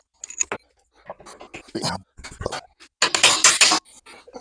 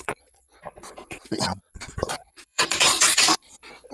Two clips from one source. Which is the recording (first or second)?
first